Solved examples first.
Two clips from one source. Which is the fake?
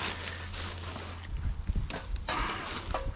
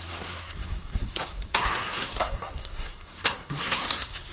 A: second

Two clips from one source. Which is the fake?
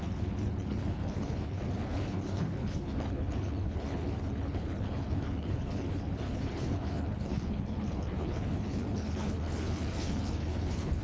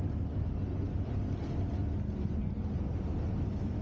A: first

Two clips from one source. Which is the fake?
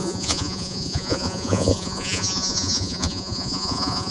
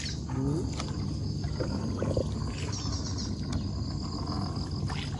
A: first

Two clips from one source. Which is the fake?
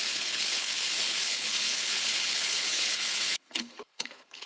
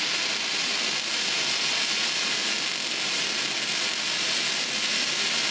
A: first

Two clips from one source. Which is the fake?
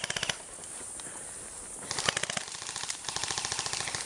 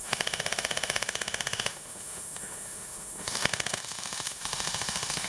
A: second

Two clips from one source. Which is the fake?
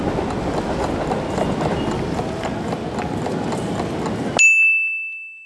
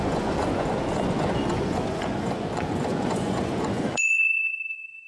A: second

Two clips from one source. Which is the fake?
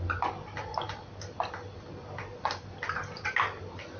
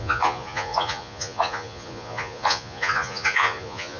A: second